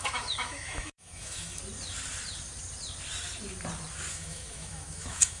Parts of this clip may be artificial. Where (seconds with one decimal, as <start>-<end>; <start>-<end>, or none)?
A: 0.0-1.6; 4.1-5.4